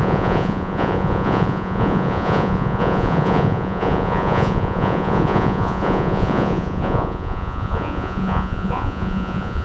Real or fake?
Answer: fake